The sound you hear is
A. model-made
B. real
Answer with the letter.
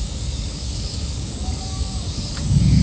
A